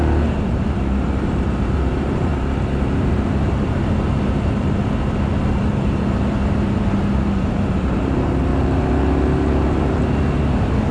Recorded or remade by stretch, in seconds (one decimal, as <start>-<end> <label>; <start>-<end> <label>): 0.0-4.8 remade; 4.8-5.4 recorded; 5.4-8.5 remade; 8.5-10.9 recorded